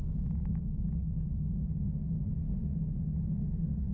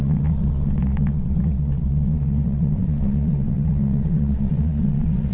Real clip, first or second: first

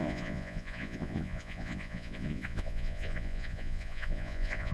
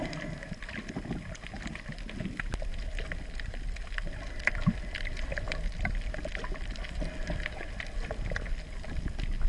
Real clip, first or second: second